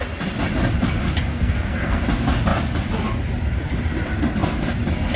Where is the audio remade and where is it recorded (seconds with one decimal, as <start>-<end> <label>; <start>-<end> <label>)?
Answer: 0.0-1.3 recorded; 1.3-2.0 remade; 2.0-5.2 recorded